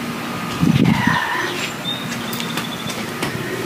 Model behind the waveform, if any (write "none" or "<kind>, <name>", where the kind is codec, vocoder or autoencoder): none